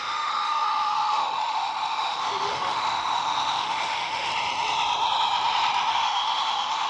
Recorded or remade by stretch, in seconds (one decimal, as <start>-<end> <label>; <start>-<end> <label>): 0.0-4.3 remade; 4.3-5.9 recorded; 5.9-6.9 remade